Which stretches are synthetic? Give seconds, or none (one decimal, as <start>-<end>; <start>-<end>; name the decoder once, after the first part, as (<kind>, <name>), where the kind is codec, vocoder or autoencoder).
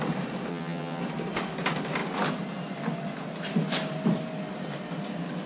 0.5-1.0 (vocoder, HiFi-GAN)